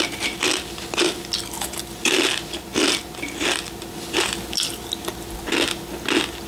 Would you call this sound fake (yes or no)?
no